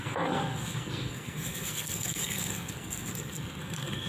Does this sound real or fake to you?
fake